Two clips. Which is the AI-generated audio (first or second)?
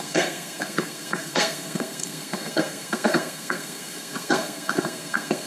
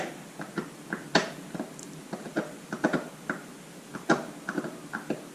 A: first